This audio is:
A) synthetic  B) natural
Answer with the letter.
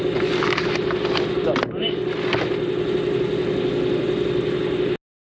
B